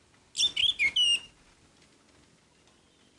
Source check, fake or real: real